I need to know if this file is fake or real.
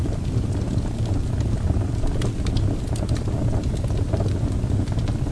real